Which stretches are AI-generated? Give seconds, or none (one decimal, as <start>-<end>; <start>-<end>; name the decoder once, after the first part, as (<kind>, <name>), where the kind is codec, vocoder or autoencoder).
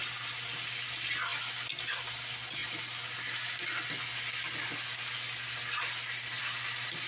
none